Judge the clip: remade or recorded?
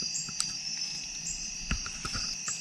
recorded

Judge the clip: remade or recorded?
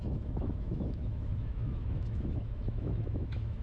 remade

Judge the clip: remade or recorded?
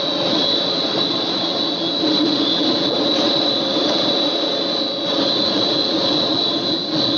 remade